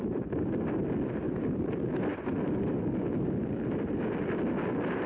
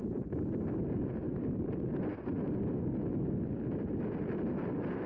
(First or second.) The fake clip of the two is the first